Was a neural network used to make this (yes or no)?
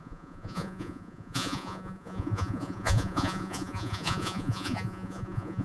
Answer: yes